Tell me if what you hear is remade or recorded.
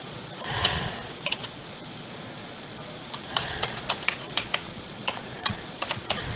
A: remade